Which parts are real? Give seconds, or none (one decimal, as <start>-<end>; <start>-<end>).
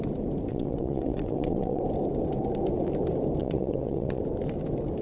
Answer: 0.0-0.5; 1.8-3.4; 4.2-5.0